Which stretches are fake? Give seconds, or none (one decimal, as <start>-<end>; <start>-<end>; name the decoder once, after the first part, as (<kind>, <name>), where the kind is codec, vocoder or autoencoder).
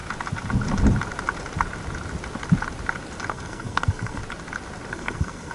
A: 3.3-4.2 (codec, SNAC); 4.9-5.5